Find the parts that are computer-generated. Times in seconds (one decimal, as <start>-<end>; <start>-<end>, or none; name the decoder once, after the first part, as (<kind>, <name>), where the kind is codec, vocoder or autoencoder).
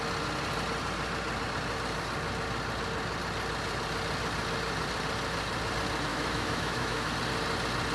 6.1-7.1 (autoencoder, DAC-VAE)